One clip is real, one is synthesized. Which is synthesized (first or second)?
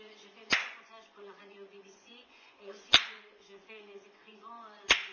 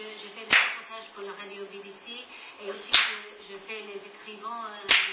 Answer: first